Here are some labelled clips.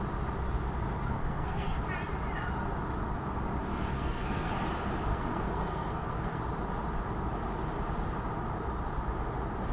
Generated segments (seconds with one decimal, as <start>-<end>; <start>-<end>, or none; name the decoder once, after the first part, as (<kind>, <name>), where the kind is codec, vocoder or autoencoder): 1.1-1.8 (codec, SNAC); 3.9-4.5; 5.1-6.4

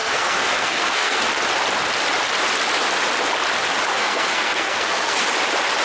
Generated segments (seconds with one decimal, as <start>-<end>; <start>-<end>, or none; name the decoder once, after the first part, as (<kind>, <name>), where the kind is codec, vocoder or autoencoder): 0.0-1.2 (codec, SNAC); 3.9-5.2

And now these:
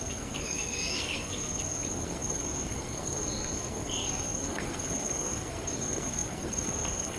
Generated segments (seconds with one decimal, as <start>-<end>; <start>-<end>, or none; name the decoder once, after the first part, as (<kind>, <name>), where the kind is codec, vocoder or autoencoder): 0.0-7.2 (codec, SNAC)